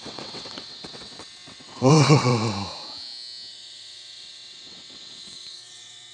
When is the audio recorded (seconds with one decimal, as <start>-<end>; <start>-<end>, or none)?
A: 2.3-3.5